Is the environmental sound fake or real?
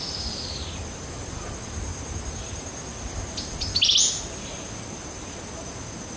real